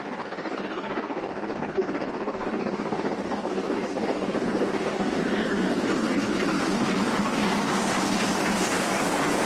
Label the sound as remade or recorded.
remade